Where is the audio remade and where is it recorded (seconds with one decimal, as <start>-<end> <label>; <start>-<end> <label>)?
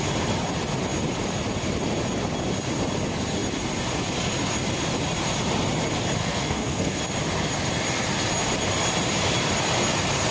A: 0.0-6.2 recorded; 6.2-7.0 remade; 7.0-10.3 recorded